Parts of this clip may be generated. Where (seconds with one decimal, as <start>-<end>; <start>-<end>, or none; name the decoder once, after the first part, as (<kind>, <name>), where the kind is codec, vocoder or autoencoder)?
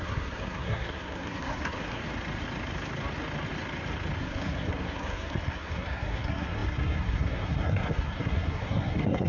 0.0-2.0 (codec, SNAC); 4.2-9.3